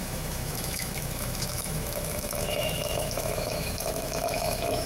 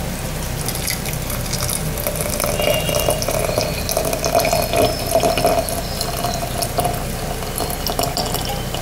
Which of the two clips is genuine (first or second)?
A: second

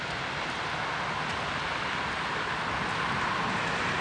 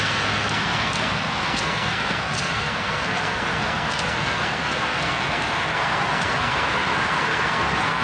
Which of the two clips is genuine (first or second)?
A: first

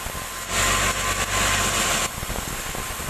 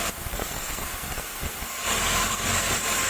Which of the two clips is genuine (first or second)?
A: first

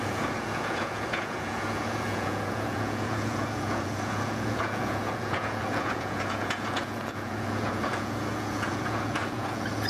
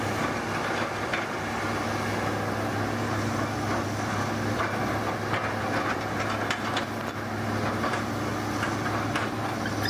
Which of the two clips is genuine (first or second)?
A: second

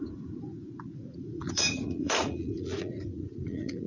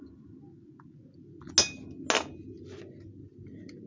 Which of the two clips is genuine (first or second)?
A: second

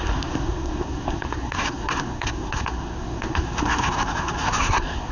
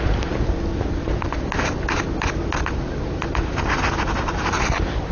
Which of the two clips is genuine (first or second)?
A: second